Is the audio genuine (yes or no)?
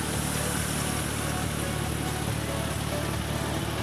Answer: yes